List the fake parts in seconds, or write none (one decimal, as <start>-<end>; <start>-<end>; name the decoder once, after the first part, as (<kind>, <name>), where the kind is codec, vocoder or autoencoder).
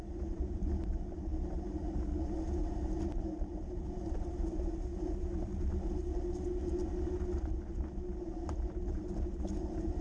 none